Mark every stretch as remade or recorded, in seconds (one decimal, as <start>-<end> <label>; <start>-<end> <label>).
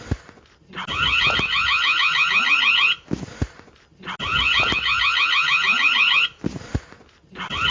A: 0.0-7.7 recorded